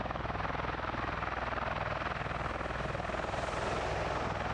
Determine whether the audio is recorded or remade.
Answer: recorded